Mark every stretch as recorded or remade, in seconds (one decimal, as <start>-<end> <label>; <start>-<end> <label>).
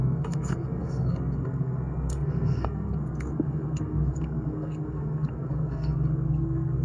0.0-6.8 remade